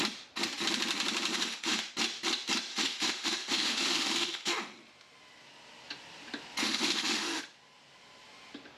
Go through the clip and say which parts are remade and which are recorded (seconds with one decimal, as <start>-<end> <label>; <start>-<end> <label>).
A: 0.0-1.3 recorded; 1.3-1.8 remade; 1.8-2.7 recorded; 2.7-4.6 remade; 4.6-6.6 recorded; 6.6-7.4 remade; 7.4-8.8 recorded